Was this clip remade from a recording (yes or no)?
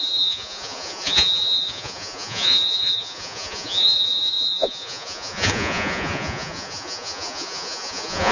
yes